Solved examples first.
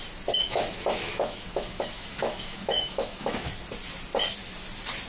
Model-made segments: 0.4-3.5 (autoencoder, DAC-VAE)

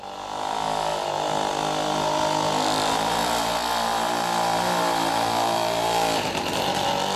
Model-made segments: none

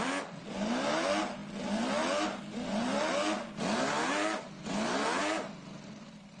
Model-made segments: none

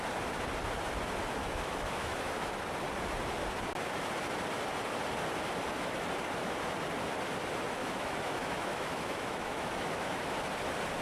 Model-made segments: 1.4-2.5 (autoencoder, DAC-VAE); 7.8-10.4

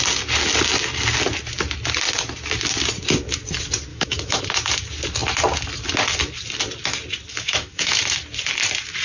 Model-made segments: 3.9-4.4 (autoencoder, DAC-VAE); 7.3-8.0

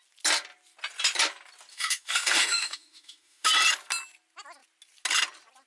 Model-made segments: 1.7-3.5 (autoencoder, DAC-VAE)

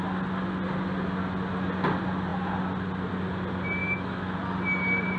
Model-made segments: 3.8-4.4 (autoencoder, DAC-VAE)